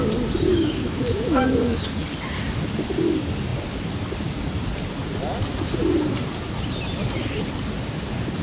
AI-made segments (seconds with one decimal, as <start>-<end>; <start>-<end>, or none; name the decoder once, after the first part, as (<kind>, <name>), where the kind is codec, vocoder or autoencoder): 0.5-1.8 (autoencoder, DAC-VAE)